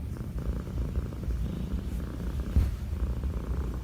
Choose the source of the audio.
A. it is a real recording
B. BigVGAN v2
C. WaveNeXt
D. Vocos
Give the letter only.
B